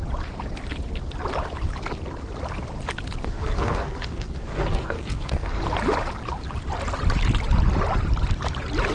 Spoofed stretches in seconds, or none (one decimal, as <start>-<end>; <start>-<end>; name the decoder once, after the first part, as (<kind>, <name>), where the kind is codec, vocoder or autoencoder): 3.2-5.6 (codec, SNAC)